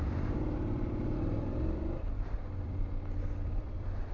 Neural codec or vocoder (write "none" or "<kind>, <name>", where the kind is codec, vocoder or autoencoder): vocoder, BigVGAN v2